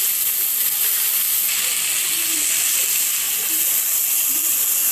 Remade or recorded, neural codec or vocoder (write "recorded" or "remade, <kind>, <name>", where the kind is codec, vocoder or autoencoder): recorded